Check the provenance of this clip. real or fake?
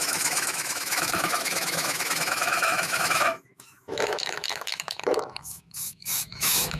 fake